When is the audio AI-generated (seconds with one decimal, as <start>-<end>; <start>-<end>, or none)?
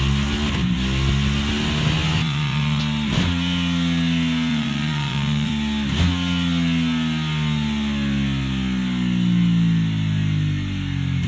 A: 2.2-2.8; 4.5-5.5